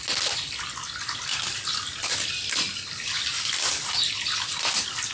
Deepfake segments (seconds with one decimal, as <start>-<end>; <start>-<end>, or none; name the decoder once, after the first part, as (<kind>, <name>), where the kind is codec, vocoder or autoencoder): none